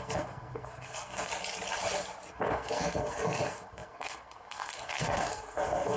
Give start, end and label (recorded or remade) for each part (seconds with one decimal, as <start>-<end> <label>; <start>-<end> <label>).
0.0-1.3 remade; 1.3-2.3 recorded; 2.3-6.0 remade

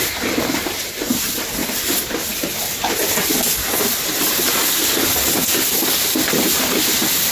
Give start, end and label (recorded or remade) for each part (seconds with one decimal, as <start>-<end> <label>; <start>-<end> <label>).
0.0-7.3 recorded